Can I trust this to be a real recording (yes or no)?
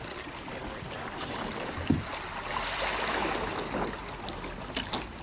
yes